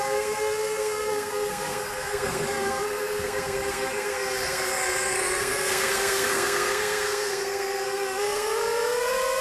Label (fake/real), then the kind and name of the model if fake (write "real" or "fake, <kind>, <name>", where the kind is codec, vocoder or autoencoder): fake, codec, SNAC